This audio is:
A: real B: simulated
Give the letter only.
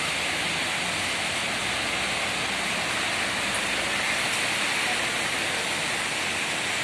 A